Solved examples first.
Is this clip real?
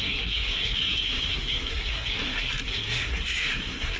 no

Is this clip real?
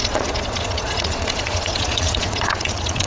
no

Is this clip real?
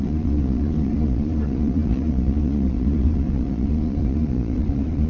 no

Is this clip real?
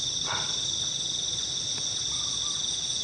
yes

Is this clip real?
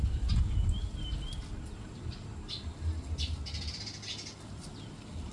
yes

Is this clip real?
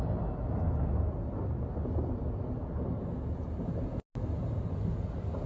yes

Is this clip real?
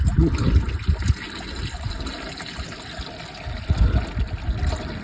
yes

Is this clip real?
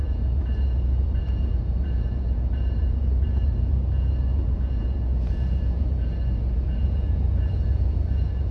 no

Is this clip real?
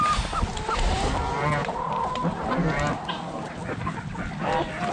yes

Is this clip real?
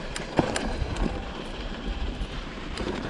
no